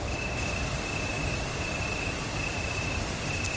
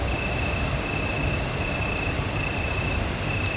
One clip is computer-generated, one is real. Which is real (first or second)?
second